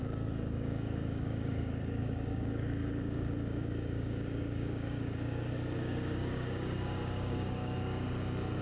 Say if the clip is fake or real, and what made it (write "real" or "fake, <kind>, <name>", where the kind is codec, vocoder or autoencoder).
fake, codec, DAC